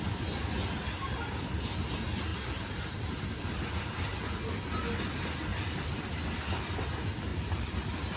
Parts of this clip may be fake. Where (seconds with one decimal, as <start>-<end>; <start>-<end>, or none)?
2.3-3.6; 5.5-6.1; 7.3-8.2